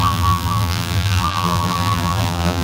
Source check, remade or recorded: remade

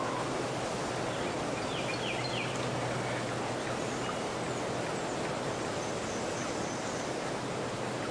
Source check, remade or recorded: recorded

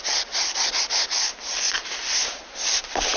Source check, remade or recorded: recorded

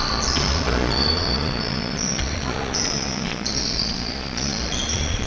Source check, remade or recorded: remade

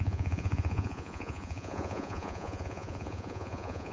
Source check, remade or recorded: remade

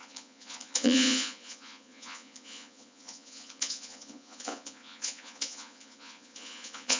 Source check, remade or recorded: remade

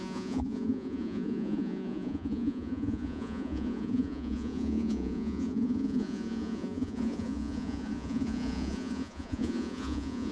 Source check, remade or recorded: remade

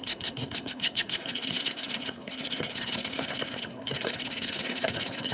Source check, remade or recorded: remade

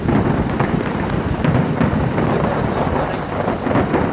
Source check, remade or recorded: recorded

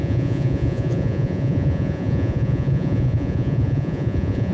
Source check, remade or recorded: remade